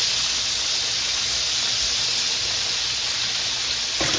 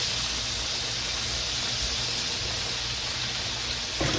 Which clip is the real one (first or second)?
second